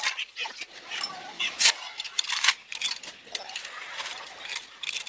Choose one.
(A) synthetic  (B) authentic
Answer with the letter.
B